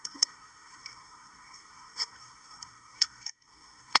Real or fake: fake